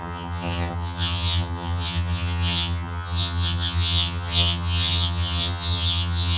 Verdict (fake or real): fake